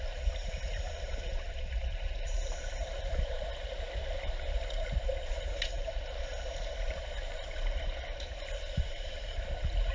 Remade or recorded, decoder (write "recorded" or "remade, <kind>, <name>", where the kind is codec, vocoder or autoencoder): remade, vocoder, BigVGAN v2